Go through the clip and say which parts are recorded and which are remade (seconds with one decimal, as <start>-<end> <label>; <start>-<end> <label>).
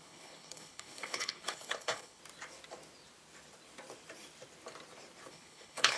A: 0.0-2.2 remade; 2.2-5.3 recorded; 5.3-6.0 remade